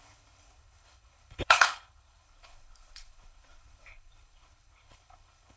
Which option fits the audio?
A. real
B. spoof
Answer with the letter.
B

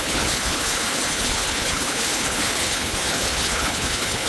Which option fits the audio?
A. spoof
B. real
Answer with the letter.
A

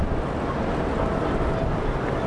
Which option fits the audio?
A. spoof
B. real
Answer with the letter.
B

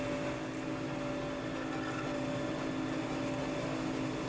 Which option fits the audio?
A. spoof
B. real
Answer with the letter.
B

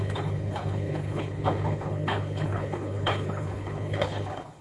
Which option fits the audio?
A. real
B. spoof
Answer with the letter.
B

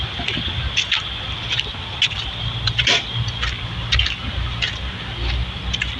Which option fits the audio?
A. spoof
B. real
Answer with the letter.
B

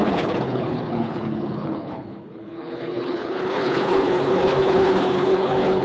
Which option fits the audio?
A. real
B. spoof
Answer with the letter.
B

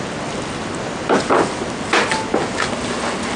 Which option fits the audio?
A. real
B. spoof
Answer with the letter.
A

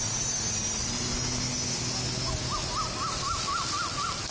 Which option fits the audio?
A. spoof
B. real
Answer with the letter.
B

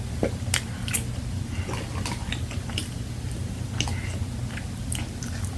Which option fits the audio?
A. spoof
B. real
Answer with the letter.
B